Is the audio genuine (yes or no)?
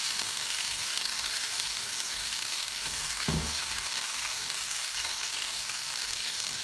no